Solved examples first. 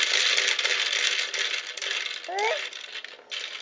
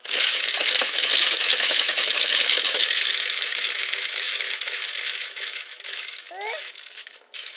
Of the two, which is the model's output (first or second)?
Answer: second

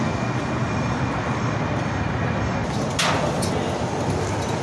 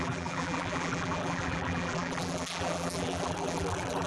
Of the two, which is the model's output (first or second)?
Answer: second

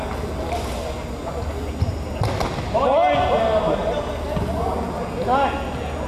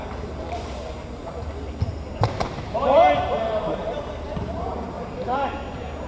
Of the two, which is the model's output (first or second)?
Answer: second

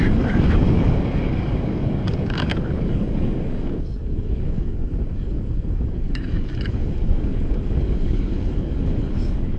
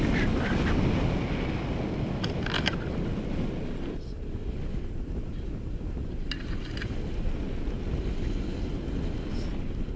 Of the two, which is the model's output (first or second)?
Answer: first